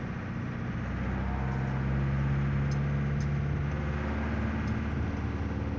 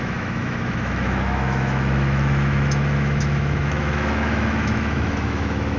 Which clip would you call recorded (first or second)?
first